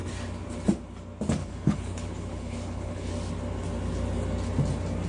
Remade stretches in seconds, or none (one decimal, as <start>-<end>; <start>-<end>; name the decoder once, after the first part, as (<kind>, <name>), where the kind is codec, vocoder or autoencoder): 1.4-3.1 (codec, HILCodec)